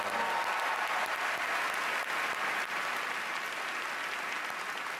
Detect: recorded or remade recorded